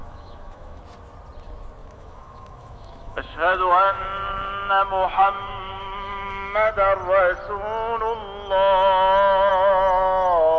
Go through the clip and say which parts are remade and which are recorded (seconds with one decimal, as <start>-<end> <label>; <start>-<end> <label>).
0.0-0.8 remade; 0.8-1.8 recorded; 1.8-6.7 remade; 6.7-10.6 recorded